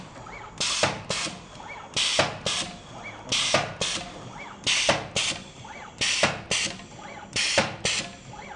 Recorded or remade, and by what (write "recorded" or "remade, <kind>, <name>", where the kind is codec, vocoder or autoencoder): recorded